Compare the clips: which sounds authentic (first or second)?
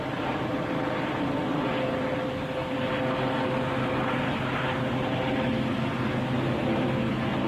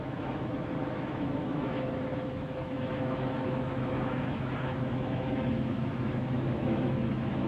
first